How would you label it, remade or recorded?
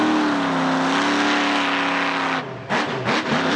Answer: recorded